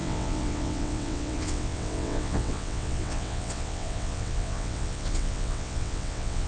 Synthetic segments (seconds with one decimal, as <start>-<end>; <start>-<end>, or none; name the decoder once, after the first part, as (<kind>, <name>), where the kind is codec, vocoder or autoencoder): 0.0-6.5 (vocoder, WaveNeXt)